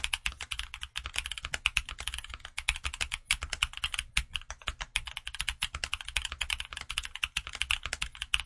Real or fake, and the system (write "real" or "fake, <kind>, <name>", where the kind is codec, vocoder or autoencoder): real